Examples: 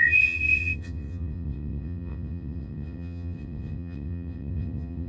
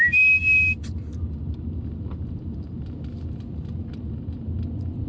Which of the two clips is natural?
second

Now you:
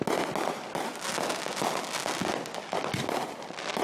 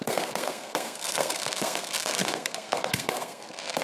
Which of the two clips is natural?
first